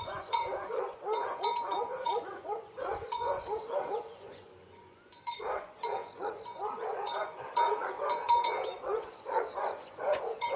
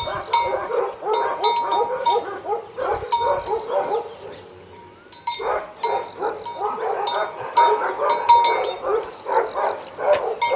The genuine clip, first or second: second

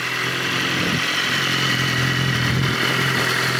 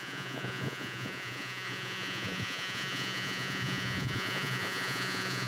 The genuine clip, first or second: first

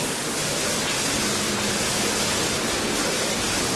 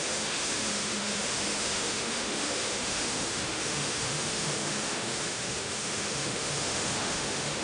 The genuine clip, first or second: first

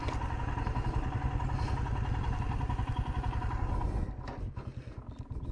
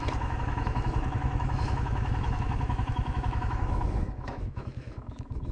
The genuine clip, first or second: first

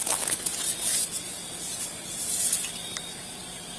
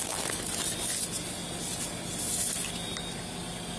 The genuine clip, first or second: second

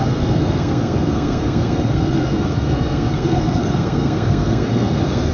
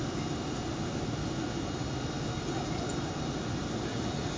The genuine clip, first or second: second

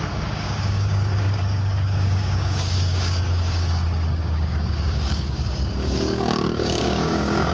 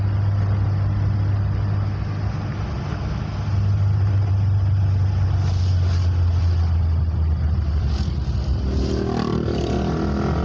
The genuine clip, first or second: second